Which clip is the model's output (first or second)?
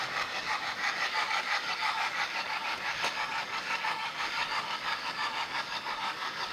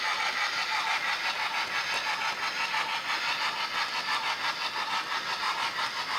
first